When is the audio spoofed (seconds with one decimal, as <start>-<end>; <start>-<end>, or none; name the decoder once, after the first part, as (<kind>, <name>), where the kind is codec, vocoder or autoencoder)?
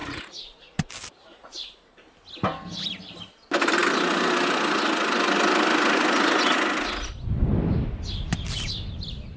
0.0-0.9 (vocoder, Vocos); 1.3-1.8